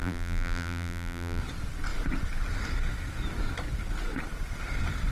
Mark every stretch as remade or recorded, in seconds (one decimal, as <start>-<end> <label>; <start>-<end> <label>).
0.0-1.4 remade; 1.4-5.1 recorded